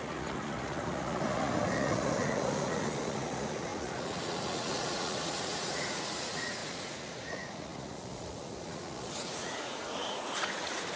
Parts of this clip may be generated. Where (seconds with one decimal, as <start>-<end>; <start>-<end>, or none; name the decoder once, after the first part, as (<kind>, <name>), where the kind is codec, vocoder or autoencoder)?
0.0-11.0 (vocoder, Vocos)